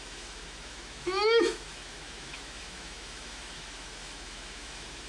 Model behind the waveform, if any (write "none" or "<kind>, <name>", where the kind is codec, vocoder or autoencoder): autoencoder, DAC-VAE